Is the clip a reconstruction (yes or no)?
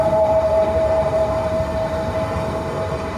yes